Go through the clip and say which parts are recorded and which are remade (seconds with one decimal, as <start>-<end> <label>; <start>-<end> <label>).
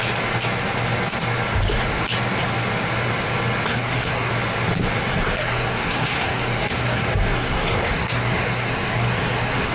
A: 0.0-3.7 recorded; 3.7-4.3 remade; 4.3-5.1 recorded; 5.1-9.7 remade